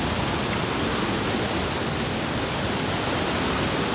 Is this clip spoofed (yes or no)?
no